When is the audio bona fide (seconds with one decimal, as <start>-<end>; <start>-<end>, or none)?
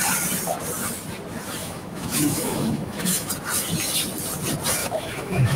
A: 0.0-1.6; 3.3-4.8